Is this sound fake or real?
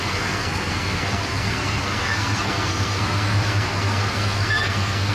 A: fake